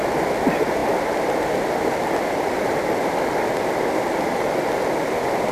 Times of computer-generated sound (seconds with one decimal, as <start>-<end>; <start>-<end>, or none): none